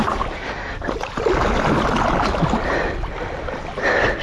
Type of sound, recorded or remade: recorded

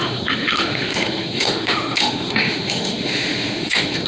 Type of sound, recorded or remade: remade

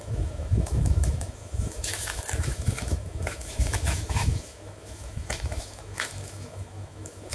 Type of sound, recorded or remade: remade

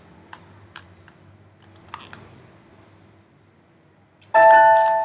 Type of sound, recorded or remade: recorded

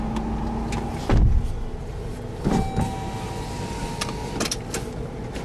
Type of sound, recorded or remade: recorded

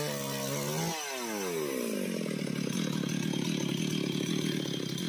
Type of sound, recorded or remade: recorded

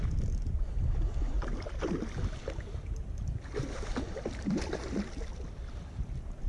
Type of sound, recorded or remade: recorded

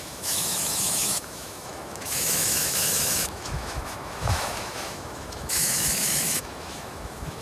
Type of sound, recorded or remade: remade